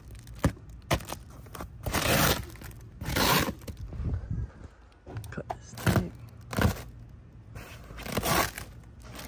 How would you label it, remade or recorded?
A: recorded